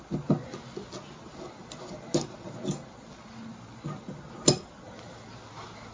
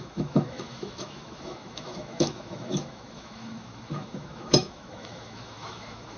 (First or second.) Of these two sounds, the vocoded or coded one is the second